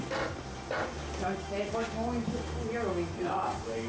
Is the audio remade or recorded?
recorded